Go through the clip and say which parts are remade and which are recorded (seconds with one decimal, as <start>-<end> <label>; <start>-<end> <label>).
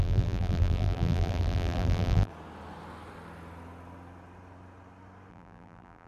0.0-2.3 remade; 2.3-5.3 recorded; 5.3-6.1 remade